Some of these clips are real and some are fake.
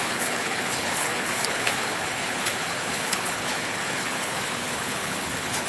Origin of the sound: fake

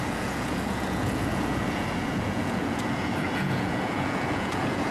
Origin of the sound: fake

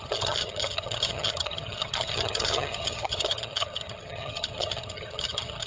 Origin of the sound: fake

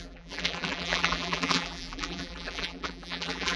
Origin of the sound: fake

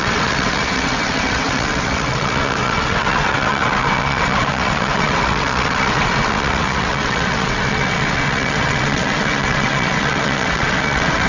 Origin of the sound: fake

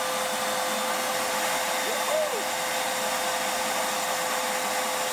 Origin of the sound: real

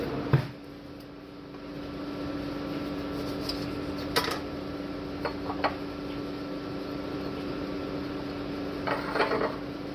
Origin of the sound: real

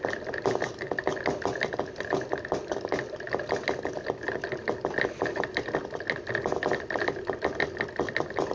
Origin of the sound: real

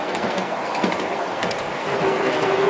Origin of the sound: fake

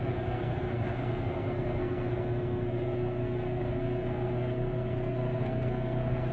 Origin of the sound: fake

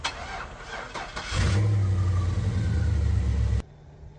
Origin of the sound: real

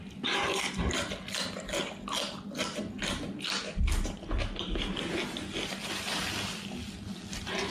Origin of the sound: real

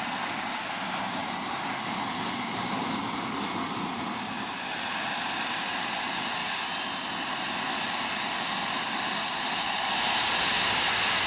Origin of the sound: real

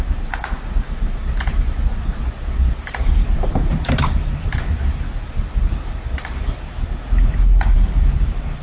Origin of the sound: fake